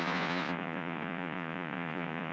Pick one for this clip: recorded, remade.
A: remade